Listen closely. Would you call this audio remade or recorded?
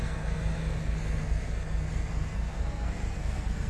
remade